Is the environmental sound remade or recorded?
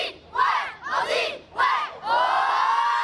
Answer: remade